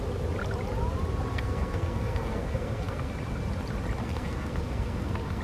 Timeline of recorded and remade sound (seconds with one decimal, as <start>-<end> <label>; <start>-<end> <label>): 0.0-1.3 recorded; 1.3-3.1 remade; 3.1-4.0 recorded; 4.0-5.4 remade